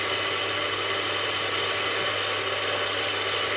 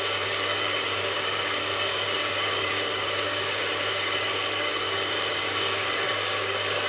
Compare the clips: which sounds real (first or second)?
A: first